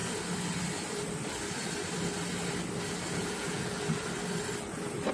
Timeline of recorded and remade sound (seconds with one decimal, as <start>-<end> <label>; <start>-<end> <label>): 0.0-3.2 recorded; 3.2-3.8 remade; 3.8-5.1 recorded